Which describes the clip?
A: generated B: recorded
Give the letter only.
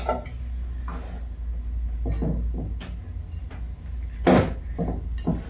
B